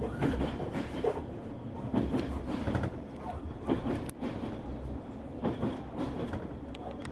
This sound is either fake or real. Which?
fake